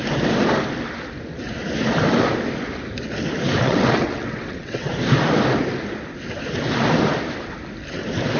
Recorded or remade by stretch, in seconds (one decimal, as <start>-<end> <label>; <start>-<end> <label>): 0.0-3.6 recorded; 3.6-4.9 remade; 4.9-8.4 recorded